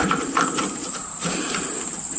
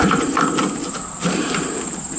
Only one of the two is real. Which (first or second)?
second